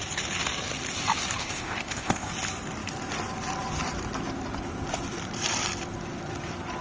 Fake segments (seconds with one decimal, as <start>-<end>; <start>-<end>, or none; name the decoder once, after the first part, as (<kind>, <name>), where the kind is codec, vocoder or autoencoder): 1.4-2.3 (codec, ZipCodec)